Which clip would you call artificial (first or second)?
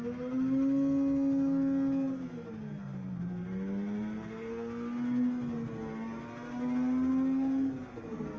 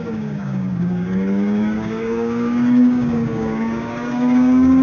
second